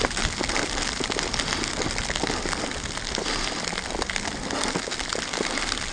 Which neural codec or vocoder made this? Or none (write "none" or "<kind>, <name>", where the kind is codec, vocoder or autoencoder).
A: none